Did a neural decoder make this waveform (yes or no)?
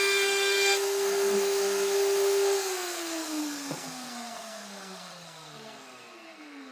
yes